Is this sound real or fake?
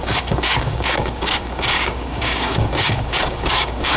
fake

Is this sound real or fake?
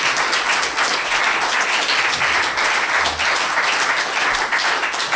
real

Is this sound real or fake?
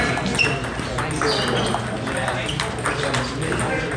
real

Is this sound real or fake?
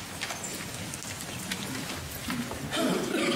real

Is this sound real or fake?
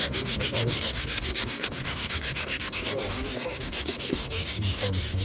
fake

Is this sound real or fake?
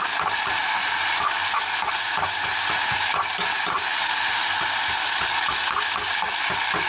real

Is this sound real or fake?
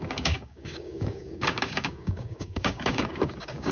fake